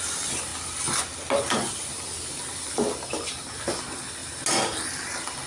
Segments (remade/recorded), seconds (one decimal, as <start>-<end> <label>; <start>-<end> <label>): 0.0-5.5 recorded